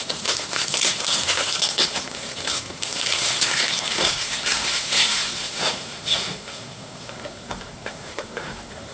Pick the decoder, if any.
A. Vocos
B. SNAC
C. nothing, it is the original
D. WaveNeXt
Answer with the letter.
B